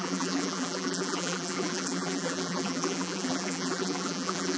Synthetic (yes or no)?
yes